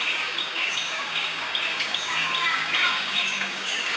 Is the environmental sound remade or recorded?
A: remade